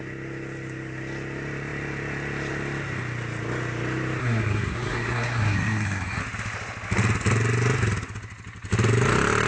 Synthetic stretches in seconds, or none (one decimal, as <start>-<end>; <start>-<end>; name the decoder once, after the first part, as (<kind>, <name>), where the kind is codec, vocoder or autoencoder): 4.2-6.2 (codec, SNAC)